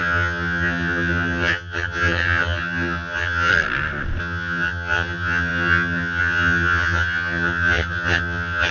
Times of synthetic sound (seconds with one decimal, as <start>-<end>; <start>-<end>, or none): 0.0-3.5; 4.2-8.7